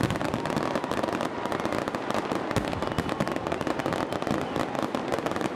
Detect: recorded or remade recorded